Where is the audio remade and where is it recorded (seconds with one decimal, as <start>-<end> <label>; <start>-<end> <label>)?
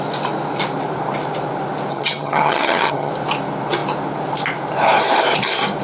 0.0-1.9 recorded; 1.9-3.1 remade; 3.1-5.8 recorded